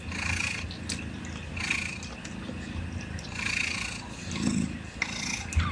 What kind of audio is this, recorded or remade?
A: recorded